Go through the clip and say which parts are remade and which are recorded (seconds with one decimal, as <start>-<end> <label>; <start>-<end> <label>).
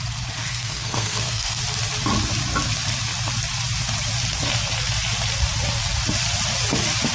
0.0-0.4 recorded; 0.4-1.6 remade; 1.6-7.1 recorded